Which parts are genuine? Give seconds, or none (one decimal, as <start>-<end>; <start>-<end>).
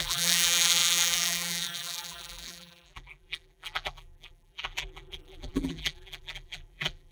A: none